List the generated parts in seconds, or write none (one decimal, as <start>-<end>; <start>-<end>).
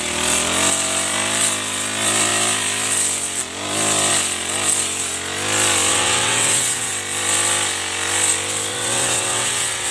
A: 5.9-6.9; 8.7-9.9